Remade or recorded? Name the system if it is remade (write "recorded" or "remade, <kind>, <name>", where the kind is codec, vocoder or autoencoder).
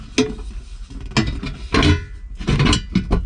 recorded